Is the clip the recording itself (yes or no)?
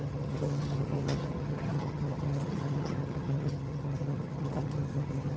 no